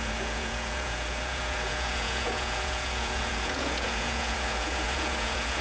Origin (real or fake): fake